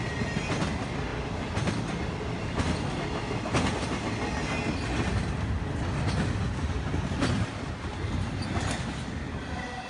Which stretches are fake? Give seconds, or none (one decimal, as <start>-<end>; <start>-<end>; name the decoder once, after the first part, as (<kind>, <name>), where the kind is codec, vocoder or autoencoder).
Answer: none